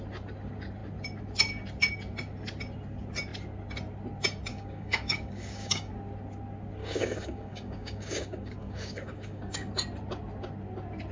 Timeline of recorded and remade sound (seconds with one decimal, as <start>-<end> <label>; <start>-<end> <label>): 0.0-4.5 recorded; 4.5-5.9 remade; 5.9-6.8 recorded; 6.8-9.7 remade; 9.7-11.1 recorded